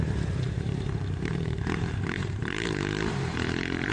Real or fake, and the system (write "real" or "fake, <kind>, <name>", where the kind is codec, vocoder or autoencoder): fake, vocoder, BigVGAN v2